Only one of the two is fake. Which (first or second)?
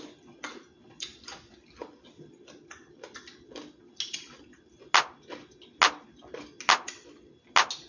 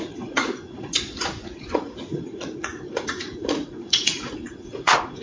second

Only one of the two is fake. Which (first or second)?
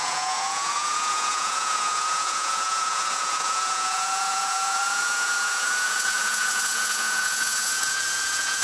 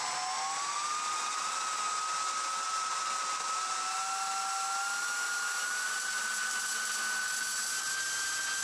first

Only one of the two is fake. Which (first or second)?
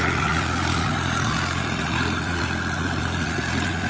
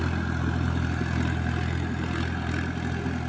first